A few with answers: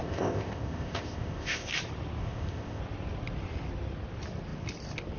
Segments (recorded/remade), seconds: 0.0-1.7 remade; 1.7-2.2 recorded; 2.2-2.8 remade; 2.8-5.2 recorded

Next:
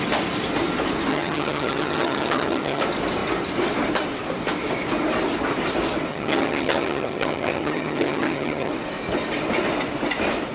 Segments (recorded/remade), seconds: 0.0-1.1 recorded; 1.1-2.8 remade; 2.8-6.1 recorded; 6.1-8.7 remade; 8.7-10.5 recorded

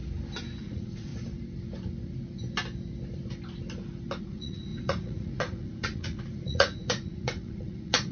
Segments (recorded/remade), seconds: 0.0-0.6 recorded; 0.6-1.1 remade; 1.1-4.2 recorded; 4.2-8.1 remade

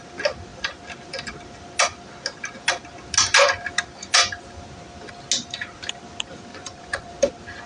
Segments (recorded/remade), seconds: 0.0-6.5 recorded; 6.5-7.1 remade; 7.1-7.7 recorded

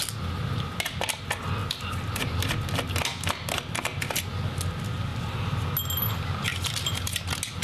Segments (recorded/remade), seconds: 0.0-5.1 recorded; 5.1-5.7 remade; 5.7-7.6 recorded

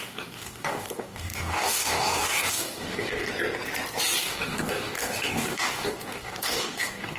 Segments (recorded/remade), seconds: 0.0-3.3 remade; 3.3-4.2 recorded; 4.2-7.2 remade

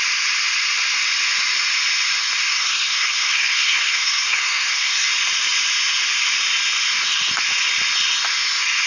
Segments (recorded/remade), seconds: 0.0-2.5 recorded; 2.5-5.1 remade; 5.1-8.9 recorded

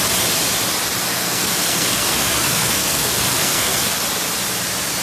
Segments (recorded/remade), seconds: 0.0-1.0 recorded; 1.0-4.0 remade; 4.0-5.0 recorded